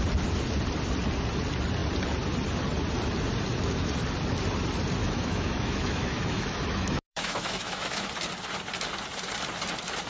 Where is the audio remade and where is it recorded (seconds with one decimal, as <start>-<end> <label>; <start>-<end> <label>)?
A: 0.0-5.0 recorded; 5.0-8.1 remade; 8.1-10.1 recorded

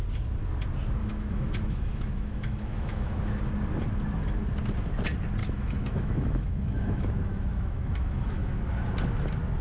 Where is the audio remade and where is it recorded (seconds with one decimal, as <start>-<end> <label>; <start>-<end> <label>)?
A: 0.0-1.0 recorded; 1.0-3.4 remade; 3.4-5.4 recorded; 5.4-8.6 remade; 8.6-9.6 recorded

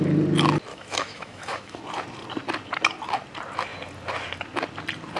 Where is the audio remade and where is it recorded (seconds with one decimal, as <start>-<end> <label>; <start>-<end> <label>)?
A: 0.0-0.7 recorded; 0.7-1.8 remade; 1.8-5.2 recorded